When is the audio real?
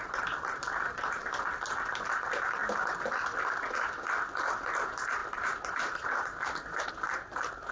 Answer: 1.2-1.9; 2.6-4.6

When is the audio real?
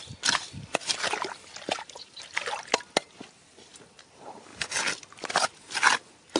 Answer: 0.0-6.4